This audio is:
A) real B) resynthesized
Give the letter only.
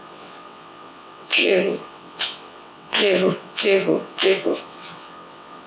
B